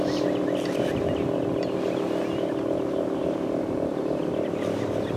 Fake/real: real